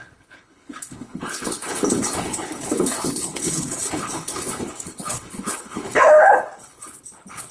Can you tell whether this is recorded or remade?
remade